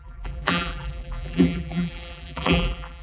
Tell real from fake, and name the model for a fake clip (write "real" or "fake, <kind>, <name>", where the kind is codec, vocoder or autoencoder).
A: fake, vocoder, BigVGAN v2